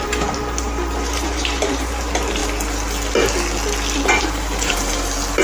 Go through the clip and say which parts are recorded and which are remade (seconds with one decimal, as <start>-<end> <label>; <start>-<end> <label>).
0.0-2.4 remade; 2.4-4.2 recorded; 4.2-5.4 remade